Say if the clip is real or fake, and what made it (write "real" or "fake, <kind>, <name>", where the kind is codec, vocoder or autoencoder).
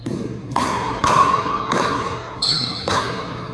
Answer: fake, codec, SNAC